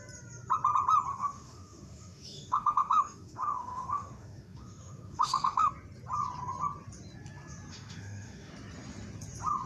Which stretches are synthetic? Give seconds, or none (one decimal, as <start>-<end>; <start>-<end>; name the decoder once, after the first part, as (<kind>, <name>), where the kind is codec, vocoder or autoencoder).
1.1-5.7 (autoencoder, DAC-VAE); 7.7-8.5